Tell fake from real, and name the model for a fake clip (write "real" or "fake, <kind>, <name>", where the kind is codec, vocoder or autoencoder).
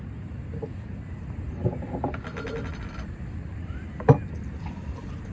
real